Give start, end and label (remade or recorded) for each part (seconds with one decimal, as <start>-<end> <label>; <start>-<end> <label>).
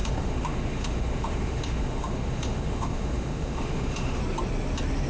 0.0-4.2 remade; 4.2-5.1 recorded